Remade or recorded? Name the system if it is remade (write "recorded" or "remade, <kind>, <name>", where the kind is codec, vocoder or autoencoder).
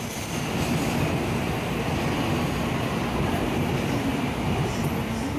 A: recorded